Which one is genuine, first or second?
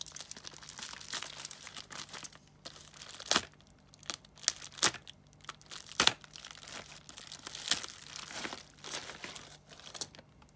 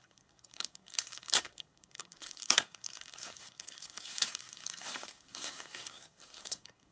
first